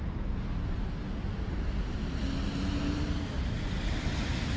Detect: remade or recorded recorded